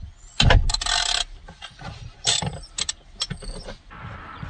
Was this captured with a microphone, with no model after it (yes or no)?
yes